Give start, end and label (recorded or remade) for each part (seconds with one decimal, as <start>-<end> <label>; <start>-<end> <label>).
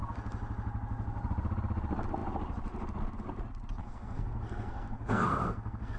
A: 0.0-3.8 recorded; 3.8-6.0 remade